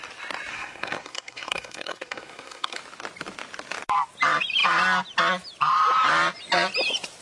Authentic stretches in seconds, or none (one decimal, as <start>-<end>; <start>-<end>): 0.0-0.5; 2.8-7.2